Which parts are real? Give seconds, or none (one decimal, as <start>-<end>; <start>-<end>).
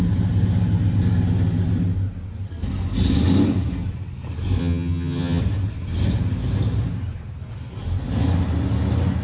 0.0-4.6; 5.4-9.2